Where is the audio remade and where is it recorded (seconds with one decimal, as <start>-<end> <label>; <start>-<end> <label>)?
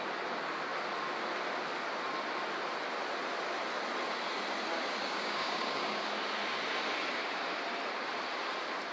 0.0-5.0 recorded; 5.0-6.0 remade; 6.0-8.9 recorded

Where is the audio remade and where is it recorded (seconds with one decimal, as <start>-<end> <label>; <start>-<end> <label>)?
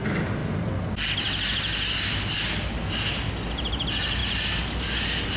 0.0-5.4 recorded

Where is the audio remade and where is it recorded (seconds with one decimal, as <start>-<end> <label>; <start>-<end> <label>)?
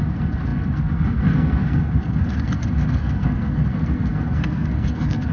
0.0-5.3 remade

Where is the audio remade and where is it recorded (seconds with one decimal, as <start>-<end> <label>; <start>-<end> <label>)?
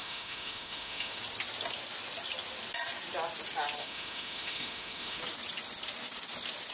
0.0-1.2 remade; 1.2-3.8 recorded; 3.8-5.2 remade; 5.2-6.7 recorded